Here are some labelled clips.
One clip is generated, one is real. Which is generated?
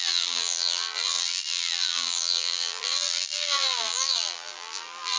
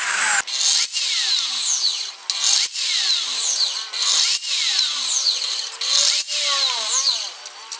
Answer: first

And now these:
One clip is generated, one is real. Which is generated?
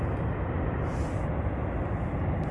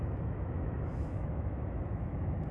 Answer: second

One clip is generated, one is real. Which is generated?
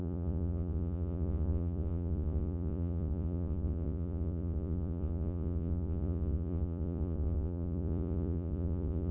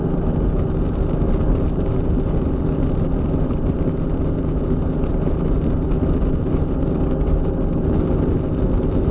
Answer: first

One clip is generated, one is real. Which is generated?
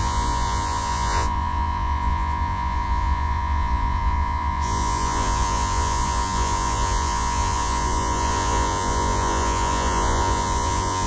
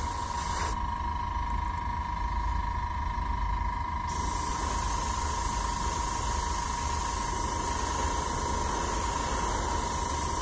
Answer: first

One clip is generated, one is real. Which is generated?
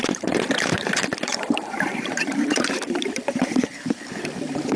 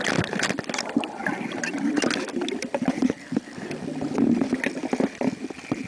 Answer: first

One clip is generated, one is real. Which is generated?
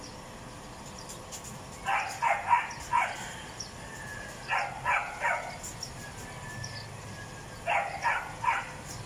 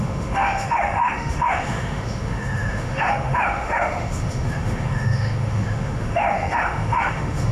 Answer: second